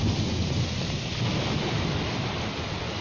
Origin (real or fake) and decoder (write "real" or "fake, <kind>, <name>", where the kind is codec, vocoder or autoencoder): real